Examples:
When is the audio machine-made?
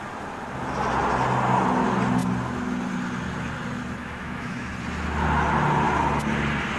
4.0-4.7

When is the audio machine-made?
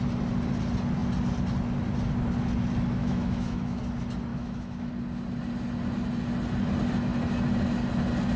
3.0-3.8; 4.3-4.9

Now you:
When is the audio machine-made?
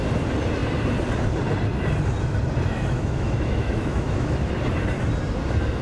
2.7-4.5